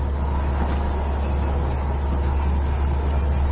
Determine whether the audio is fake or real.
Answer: real